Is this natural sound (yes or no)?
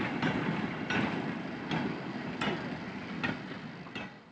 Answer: yes